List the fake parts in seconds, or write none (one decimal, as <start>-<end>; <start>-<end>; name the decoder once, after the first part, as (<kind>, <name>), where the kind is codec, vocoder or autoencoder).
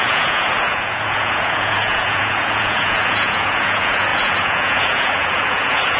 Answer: 0.0-6.0 (vocoder, Vocos)